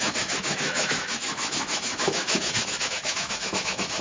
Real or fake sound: fake